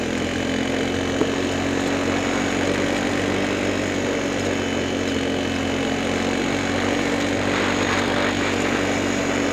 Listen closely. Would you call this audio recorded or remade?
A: recorded